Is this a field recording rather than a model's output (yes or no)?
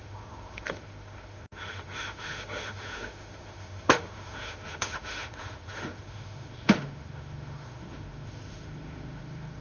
no